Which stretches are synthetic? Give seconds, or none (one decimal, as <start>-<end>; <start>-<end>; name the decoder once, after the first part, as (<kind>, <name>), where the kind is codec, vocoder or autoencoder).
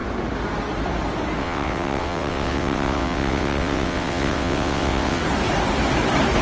1.4-5.2 (vocoder, WaveNeXt)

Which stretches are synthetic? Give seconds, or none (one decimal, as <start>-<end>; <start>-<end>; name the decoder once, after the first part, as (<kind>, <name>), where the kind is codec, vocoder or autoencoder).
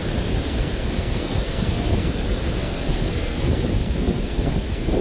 0.0-5.0 (codec, SNAC)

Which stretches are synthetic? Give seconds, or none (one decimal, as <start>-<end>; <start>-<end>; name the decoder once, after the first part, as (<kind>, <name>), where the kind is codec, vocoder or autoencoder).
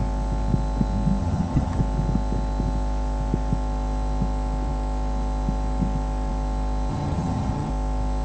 1.2-1.8 (vocoder, HiFi-GAN); 6.9-7.7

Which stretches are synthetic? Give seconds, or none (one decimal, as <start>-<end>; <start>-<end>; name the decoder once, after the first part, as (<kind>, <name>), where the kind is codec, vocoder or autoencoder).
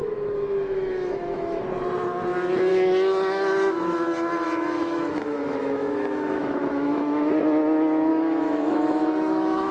0.0-1.6 (autoencoder, DAC-VAE); 2.7-7.3; 8.1-9.7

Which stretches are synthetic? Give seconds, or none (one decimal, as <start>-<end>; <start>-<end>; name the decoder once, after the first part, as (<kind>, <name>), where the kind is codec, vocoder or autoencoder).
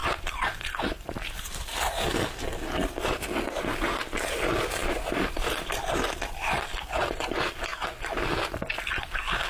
0.0-1.1 (vocoder, BigVGAN v2); 4.8-6.7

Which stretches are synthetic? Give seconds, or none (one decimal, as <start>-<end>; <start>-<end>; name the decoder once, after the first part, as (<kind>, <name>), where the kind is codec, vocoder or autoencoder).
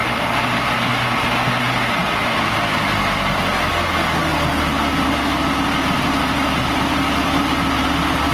none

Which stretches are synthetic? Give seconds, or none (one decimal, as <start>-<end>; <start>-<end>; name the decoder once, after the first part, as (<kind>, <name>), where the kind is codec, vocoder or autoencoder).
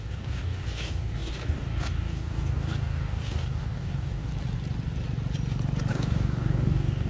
0.0-4.3 (codec, DAC); 5.9-7.1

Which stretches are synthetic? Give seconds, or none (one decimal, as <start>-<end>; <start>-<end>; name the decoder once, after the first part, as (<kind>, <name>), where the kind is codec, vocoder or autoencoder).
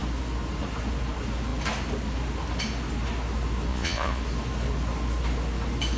3.7-4.2 (vocoder, Vocos)